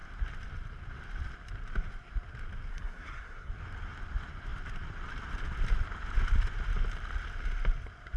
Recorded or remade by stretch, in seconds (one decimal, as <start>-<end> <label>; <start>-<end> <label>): 0.0-2.7 recorded; 2.7-3.5 remade; 3.5-8.2 recorded